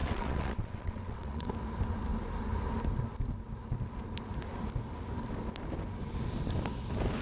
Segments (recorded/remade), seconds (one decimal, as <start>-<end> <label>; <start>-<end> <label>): 0.0-1.5 remade; 1.5-7.2 recorded

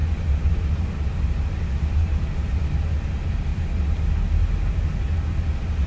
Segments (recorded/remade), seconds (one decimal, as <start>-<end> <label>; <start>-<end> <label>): 0.0-5.9 recorded

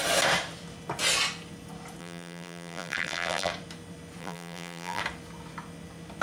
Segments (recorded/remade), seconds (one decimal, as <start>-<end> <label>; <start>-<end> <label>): 0.0-2.0 recorded; 2.0-3.5 remade; 3.5-4.2 recorded; 4.2-5.0 remade; 5.0-6.2 recorded

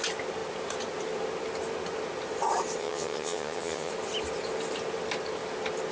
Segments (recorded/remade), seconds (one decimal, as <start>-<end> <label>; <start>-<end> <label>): 0.0-2.8 recorded; 2.8-3.9 remade; 3.9-5.9 recorded